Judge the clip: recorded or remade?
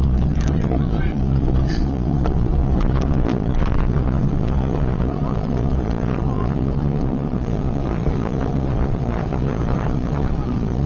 remade